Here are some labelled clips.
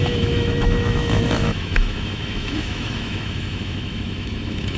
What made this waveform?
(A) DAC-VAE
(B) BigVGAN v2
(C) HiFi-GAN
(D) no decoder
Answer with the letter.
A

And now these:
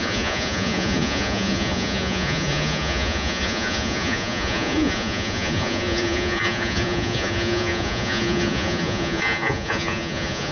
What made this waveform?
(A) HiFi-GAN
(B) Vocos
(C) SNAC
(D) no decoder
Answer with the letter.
B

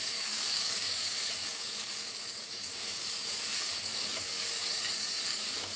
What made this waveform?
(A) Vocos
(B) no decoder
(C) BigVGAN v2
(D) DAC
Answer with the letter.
D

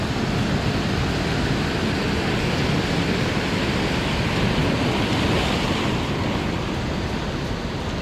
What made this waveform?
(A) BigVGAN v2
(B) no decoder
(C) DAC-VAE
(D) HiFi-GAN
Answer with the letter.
B